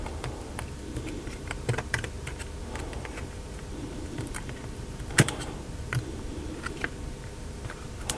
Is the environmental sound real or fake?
fake